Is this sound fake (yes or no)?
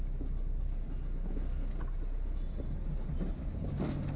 no